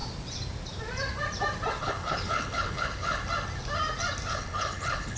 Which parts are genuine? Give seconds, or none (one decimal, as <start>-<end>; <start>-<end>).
0.0-1.8; 3.2-4.3